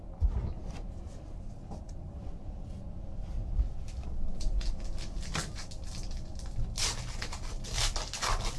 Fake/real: real